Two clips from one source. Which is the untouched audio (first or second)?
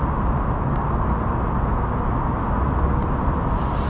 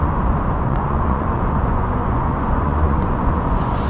first